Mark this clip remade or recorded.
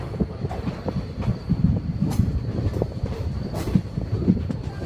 remade